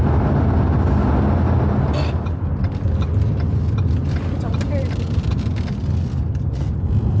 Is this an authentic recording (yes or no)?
yes